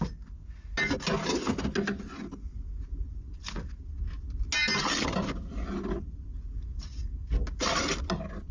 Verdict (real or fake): real